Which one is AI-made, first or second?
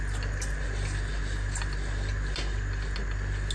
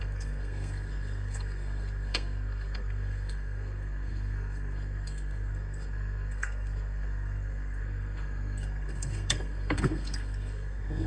second